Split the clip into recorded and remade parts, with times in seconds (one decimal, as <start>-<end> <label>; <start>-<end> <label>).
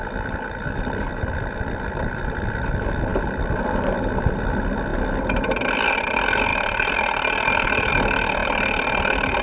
0.0-9.4 recorded